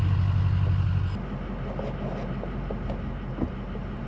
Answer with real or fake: real